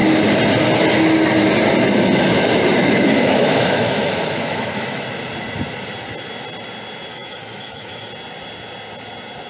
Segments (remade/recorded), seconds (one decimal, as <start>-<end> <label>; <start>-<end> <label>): 0.0-2.8 recorded; 2.8-5.0 remade; 5.0-7.1 recorded; 7.1-8.1 remade; 8.1-9.5 recorded